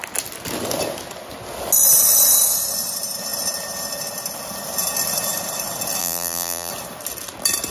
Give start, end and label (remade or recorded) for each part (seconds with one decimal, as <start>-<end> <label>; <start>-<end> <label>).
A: 0.0-6.0 recorded; 6.0-6.7 remade; 6.7-7.7 recorded